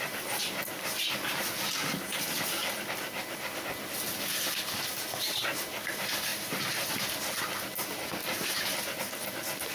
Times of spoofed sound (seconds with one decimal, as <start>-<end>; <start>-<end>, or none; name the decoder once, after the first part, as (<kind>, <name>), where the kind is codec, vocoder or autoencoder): none